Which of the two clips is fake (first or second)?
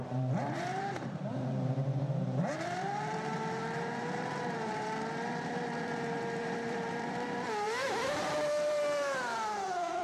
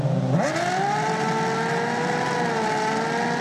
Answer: first